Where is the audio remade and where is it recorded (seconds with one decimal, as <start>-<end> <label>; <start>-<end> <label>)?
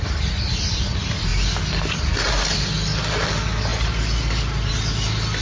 0.0-5.4 recorded